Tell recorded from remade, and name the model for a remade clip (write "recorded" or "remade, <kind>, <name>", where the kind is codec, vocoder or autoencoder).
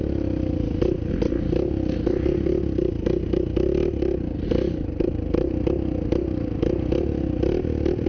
recorded